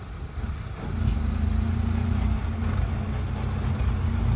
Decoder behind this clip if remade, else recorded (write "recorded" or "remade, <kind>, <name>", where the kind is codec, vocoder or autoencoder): recorded